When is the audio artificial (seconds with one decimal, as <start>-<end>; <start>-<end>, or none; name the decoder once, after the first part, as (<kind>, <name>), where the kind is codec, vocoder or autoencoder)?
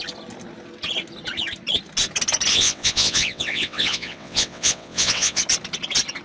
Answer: 2.5-5.4 (vocoder, WaveNeXt)